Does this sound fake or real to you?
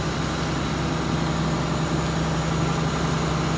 real